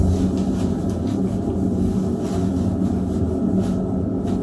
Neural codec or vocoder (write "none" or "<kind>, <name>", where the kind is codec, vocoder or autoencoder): none